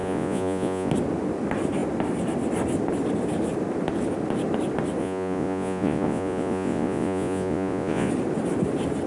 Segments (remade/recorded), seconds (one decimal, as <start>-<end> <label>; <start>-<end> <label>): 0.0-0.9 remade; 0.9-5.0 recorded; 5.0-8.1 remade; 8.1-9.1 recorded